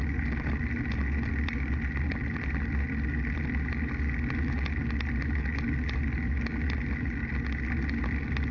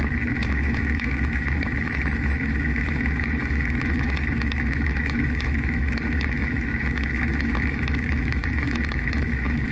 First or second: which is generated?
second